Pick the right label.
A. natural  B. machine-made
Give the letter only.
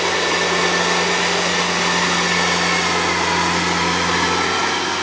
A